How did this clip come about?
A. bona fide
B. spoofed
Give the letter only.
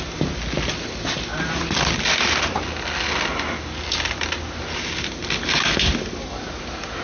A